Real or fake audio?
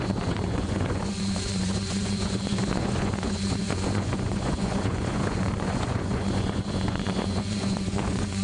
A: fake